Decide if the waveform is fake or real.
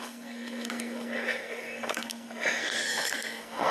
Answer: fake